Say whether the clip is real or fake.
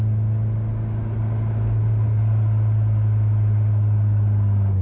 real